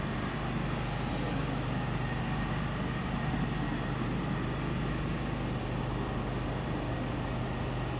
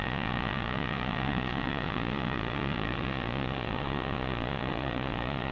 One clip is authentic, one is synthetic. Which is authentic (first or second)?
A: first